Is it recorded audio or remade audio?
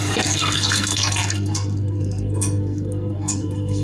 remade